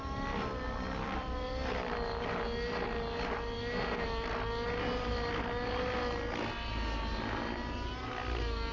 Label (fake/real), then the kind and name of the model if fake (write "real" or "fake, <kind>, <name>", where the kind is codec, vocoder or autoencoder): real